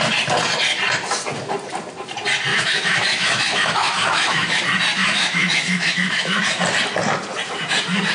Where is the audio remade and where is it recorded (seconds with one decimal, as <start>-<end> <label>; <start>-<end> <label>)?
0.0-2.5 recorded; 2.5-4.6 remade; 4.6-5.0 recorded; 5.0-6.6 remade; 6.6-8.1 recorded